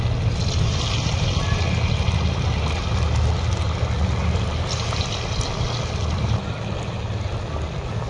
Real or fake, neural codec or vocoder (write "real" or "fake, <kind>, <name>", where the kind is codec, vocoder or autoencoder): real